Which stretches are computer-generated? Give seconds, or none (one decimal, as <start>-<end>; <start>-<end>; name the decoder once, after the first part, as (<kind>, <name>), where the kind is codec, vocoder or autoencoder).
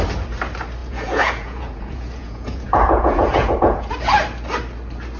0.8-3.9 (vocoder, Vocos)